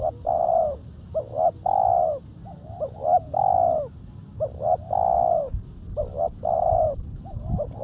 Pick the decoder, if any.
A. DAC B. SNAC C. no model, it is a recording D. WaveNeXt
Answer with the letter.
C